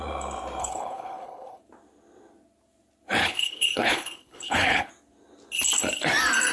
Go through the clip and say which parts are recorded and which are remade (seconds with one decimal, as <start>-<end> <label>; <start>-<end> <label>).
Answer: 0.0-0.6 recorded; 0.6-1.6 remade; 1.6-3.2 recorded; 3.2-4.9 remade; 4.9-6.5 recorded